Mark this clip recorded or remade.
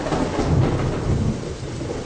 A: recorded